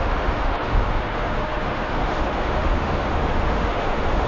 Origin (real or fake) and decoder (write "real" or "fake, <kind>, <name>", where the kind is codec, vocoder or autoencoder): fake, autoencoder, DAC-VAE